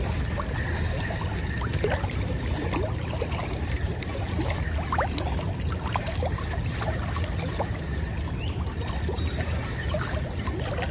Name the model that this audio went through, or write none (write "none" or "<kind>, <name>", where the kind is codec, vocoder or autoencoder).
vocoder, BigVGAN v2